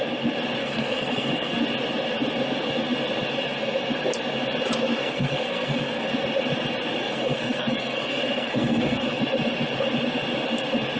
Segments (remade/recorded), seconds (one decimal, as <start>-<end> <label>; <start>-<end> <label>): 0.0-0.6 recorded; 0.6-1.6 remade; 1.6-5.0 recorded; 5.0-6.1 remade; 6.1-7.0 recorded; 7.0-9.2 remade; 9.2-11.0 recorded